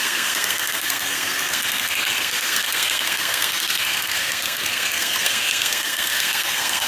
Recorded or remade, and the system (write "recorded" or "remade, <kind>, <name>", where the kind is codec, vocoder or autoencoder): remade, codec, SNAC